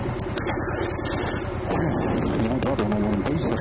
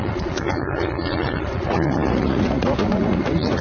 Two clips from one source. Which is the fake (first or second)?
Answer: second